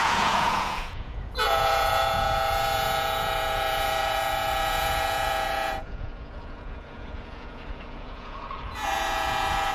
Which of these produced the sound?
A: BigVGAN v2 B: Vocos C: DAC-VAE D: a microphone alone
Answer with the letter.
B